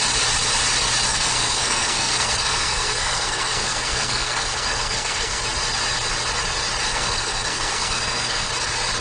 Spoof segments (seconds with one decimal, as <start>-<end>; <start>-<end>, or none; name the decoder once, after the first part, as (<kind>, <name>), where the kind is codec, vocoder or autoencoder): 1.1-5.4 (codec, SNAC); 6.9-8.5